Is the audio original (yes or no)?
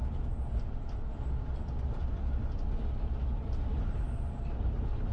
yes